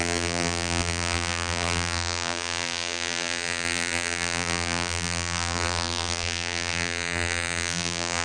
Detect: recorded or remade remade